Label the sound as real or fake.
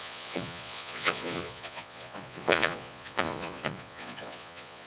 fake